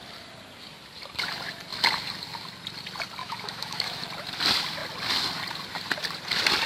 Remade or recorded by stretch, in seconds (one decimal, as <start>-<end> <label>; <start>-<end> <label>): 0.0-3.2 recorded; 3.2-4.0 remade; 4.0-6.7 recorded

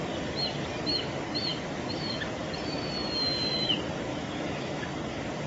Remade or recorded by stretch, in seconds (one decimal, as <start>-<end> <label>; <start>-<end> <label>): 0.0-4.1 recorded; 4.1-4.8 remade; 4.8-5.5 recorded

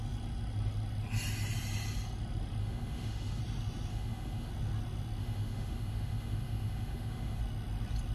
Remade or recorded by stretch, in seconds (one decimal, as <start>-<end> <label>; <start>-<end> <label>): 0.0-2.6 recorded; 2.6-3.4 remade; 3.4-3.9 recorded; 3.9-4.5 remade; 4.5-5.2 recorded; 5.2-7.4 remade; 7.4-8.1 recorded

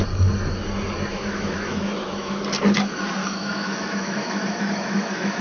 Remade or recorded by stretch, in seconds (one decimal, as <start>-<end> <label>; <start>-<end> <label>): 0.0-1.1 recorded; 1.1-2.4 remade; 2.4-3.2 recorded; 3.2-5.4 remade